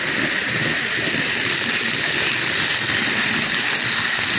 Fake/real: real